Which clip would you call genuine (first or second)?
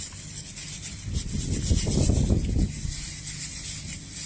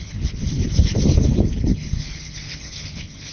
first